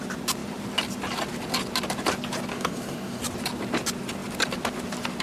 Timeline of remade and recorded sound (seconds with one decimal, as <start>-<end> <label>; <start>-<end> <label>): 0.0-2.5 recorded; 2.5-3.2 remade; 3.2-5.2 recorded